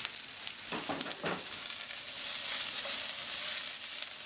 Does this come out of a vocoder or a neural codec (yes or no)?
no